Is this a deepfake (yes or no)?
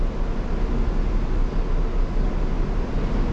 no